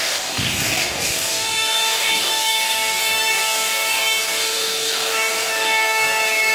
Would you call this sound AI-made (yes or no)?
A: yes